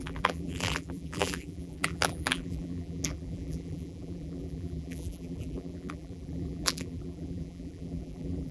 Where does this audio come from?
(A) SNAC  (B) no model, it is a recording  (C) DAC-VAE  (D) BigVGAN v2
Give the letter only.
D